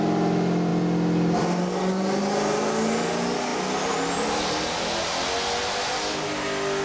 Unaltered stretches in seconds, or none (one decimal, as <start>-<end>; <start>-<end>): 0.0-6.8